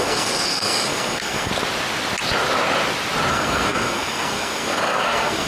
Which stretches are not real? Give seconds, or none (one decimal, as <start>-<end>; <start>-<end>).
0.0-1.5; 3.3-5.5